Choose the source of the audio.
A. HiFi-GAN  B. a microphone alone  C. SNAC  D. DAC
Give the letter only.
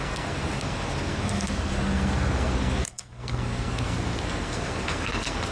C